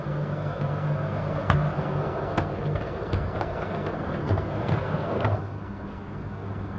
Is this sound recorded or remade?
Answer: remade